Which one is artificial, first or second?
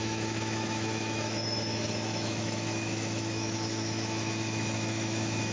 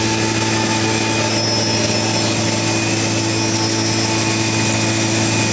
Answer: first